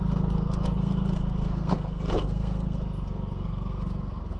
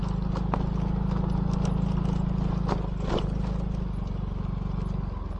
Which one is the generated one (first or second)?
first